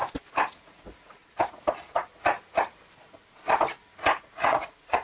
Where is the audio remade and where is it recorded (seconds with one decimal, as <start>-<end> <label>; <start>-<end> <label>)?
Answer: 0.0-0.6 recorded; 0.6-1.2 remade; 1.2-4.2 recorded; 4.2-5.0 remade